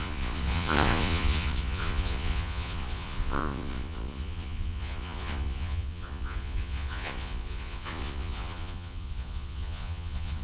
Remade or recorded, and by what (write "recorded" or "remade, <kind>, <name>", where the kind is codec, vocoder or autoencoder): remade, vocoder, Vocos